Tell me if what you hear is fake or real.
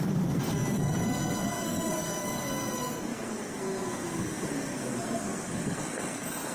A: fake